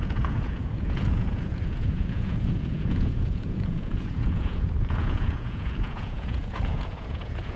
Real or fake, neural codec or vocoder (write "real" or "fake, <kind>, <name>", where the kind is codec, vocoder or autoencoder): fake, vocoder, Vocos